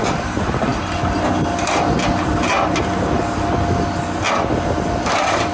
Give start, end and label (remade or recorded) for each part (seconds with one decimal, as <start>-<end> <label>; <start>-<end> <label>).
0.0-5.5 recorded